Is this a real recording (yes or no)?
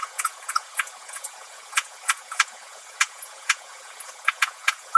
no